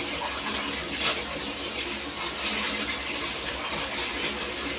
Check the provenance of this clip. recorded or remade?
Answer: recorded